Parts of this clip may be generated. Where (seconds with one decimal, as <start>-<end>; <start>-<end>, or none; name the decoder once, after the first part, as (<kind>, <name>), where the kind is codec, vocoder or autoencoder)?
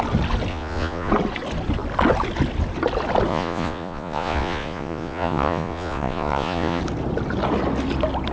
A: 0.5-1.1 (vocoder, Vocos); 3.3-6.8